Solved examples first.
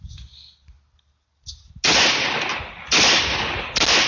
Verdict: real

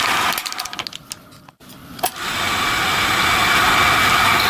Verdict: real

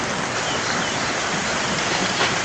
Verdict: real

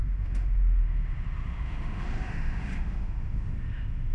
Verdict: fake